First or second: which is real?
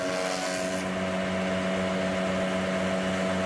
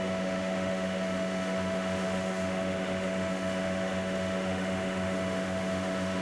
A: first